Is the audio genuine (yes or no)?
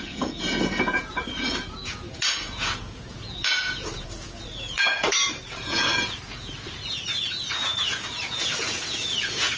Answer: no